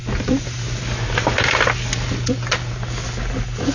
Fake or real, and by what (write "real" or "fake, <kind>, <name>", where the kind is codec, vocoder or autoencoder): real